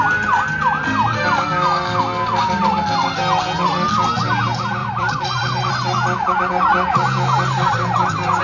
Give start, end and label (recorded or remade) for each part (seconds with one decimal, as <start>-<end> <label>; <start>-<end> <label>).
0.0-4.8 recorded; 4.8-5.7 remade; 5.7-8.4 recorded